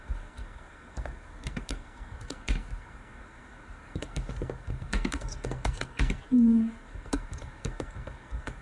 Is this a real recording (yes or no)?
no